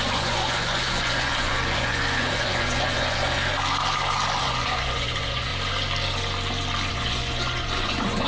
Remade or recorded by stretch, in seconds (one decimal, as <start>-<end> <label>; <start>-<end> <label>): 0.0-3.4 remade; 3.4-4.4 recorded; 4.4-5.5 remade; 5.5-6.9 recorded; 6.9-8.3 remade